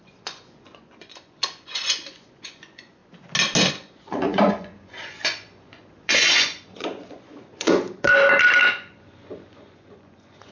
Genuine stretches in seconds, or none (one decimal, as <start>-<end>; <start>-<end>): 3.0-3.7; 8.1-8.7